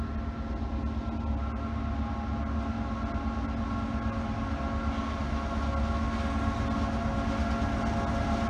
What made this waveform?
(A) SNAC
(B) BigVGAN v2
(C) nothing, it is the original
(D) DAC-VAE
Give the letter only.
C